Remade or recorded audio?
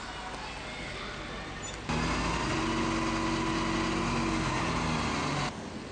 recorded